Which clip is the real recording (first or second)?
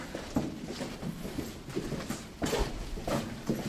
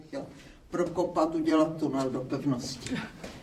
first